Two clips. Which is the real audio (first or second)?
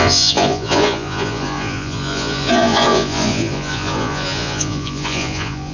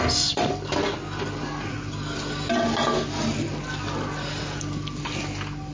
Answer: second